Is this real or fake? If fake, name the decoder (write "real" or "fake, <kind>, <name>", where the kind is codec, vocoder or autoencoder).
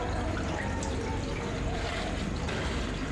real